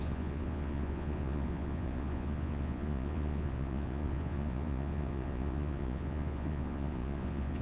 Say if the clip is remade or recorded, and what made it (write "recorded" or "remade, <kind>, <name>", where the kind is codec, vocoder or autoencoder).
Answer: remade, vocoder, Vocos